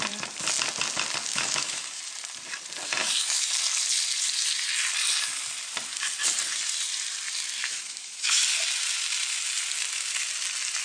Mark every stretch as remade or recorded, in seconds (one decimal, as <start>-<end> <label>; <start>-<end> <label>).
0.0-1.3 recorded; 1.3-2.0 remade; 2.0-3.0 recorded; 3.0-3.5 remade; 3.5-7.6 recorded; 7.6-8.4 remade; 8.4-10.8 recorded